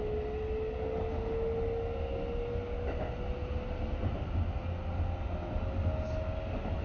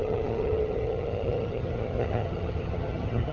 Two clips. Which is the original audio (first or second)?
first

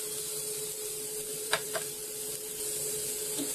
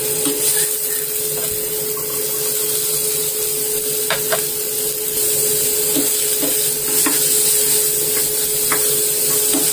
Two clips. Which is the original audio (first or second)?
second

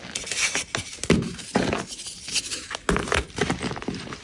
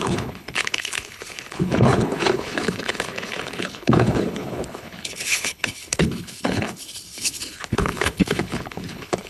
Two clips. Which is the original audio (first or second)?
first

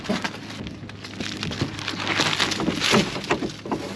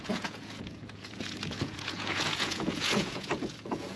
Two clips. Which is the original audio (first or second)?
first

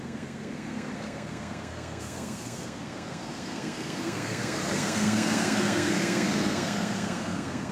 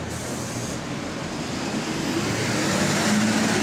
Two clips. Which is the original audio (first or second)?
second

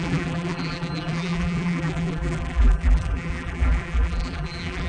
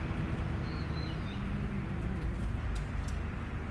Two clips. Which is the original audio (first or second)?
second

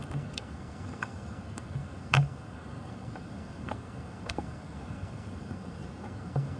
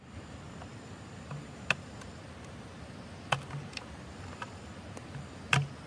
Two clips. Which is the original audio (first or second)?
second